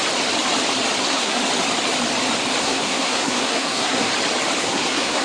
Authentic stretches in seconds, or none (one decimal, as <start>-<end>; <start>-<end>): 0.0-1.0; 1.4-2.6; 4.1-4.6

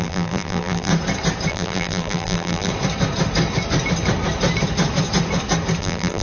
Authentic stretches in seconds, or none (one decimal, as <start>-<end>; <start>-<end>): 0.9-1.5; 2.7-5.8

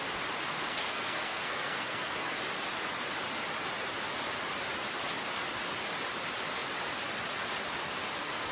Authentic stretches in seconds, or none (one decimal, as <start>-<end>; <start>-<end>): 0.0-0.5; 2.4-8.5

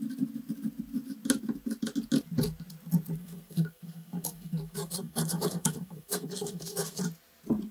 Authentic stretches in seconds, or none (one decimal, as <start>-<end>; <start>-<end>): 0.0-3.2; 7.0-7.7